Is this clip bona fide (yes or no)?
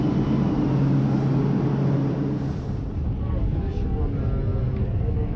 yes